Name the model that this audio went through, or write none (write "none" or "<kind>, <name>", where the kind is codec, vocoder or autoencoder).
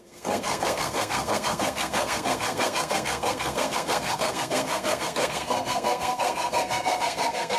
codec, SNAC